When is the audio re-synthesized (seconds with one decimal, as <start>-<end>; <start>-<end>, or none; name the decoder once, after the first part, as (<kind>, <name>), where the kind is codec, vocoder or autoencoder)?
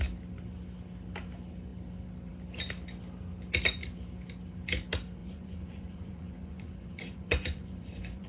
5.2-8.3 (vocoder, Vocos)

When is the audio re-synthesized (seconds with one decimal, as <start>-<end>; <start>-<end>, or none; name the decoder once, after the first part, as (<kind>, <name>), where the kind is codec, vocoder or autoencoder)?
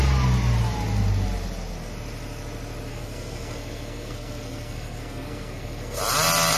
2.9-6.0 (codec, SNAC)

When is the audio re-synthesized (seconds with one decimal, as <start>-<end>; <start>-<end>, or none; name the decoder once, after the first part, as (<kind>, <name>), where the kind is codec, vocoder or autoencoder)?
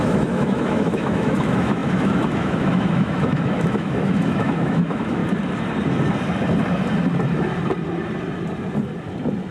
0.0-5.2 (autoencoder, DAC-VAE)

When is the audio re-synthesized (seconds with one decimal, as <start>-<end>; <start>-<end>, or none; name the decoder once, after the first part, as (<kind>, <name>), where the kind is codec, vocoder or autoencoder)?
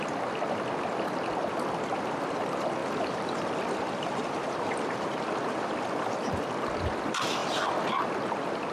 2.8-6.1 (vocoder, BigVGAN v2)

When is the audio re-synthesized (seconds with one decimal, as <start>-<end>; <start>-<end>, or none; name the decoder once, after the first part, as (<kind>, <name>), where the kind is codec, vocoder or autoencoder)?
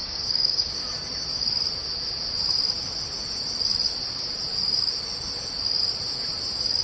0.0-0.8 (codec, DAC)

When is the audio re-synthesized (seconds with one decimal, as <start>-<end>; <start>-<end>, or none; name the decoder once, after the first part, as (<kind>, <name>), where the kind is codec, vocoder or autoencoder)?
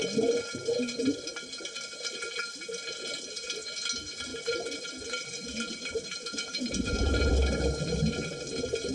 4.3-7.3 (vocoder, BigVGAN v2)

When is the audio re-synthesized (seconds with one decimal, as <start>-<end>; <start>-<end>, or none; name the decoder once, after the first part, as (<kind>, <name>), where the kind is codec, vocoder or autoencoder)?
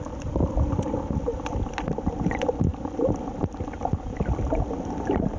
none